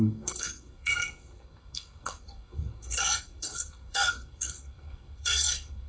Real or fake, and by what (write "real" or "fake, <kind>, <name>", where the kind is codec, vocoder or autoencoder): fake, codec, SNAC